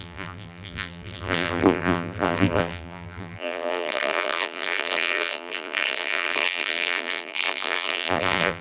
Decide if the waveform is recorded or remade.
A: remade